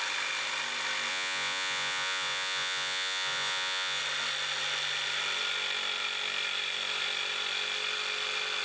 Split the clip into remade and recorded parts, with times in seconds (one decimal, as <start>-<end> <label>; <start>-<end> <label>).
0.0-1.1 recorded; 1.1-4.0 remade; 4.0-8.6 recorded